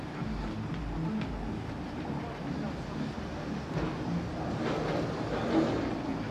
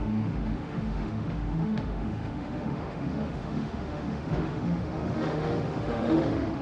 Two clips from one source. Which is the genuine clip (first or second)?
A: first